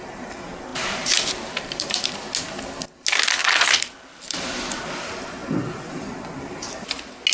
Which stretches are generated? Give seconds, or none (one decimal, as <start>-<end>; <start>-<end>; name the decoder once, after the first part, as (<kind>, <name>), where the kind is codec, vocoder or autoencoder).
0.7-2.1 (vocoder, BigVGAN v2); 3.4-4.4